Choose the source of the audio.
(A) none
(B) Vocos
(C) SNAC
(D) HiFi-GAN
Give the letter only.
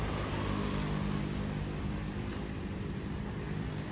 A